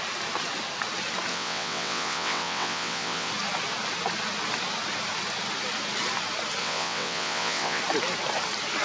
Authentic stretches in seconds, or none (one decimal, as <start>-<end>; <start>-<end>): 0.0-1.3; 3.3-6.6; 7.8-8.8